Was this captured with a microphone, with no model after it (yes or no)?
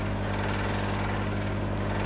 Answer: yes